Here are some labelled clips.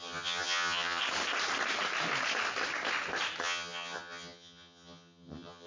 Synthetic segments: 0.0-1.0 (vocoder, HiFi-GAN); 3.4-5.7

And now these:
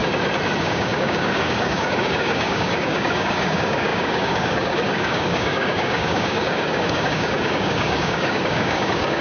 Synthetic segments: 0.6-9.2 (codec, DAC)

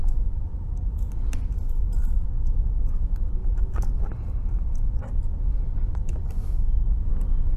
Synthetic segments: none